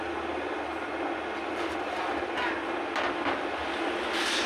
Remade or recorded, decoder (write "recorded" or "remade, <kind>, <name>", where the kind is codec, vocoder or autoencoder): recorded